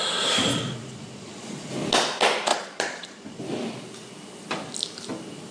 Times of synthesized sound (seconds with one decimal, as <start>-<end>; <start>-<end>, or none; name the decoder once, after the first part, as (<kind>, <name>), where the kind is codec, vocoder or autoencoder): 0.5-1.7 (vocoder, Vocos); 2.5-3.4